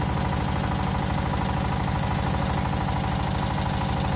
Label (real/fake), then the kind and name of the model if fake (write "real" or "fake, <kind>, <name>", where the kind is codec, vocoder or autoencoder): real